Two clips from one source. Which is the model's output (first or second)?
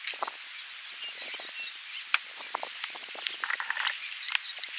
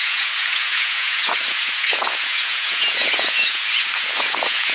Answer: second